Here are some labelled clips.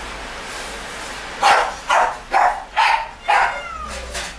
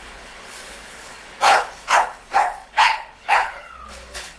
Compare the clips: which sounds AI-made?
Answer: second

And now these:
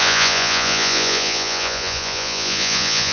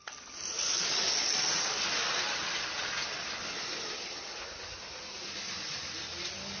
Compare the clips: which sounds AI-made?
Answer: first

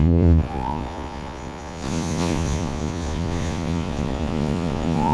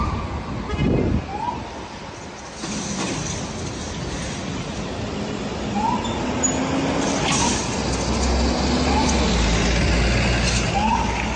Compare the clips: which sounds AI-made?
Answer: first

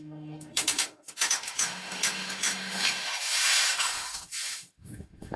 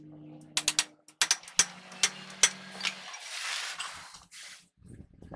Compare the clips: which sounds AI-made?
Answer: first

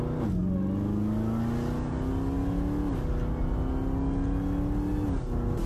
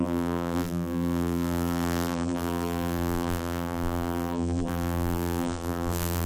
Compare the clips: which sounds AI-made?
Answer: second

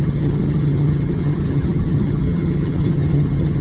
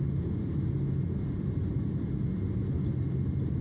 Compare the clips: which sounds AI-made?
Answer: first